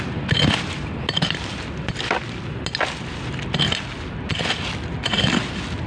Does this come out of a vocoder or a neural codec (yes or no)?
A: no